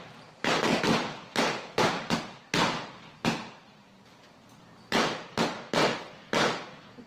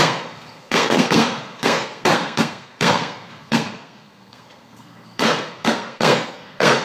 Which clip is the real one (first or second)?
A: first